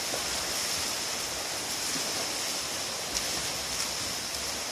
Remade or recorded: recorded